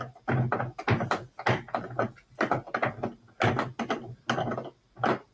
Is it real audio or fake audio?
real